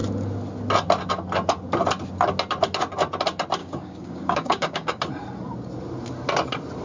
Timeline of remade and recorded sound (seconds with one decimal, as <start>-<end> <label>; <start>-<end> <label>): 0.0-3.6 recorded; 3.6-5.0 remade; 5.0-6.8 recorded